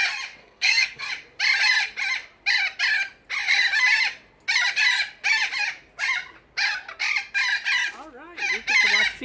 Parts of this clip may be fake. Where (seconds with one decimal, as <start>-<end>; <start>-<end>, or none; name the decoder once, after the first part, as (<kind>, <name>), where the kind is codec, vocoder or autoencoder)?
0.4-1.1 (codec, SNAC)